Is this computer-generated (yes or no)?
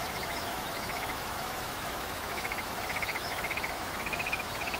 yes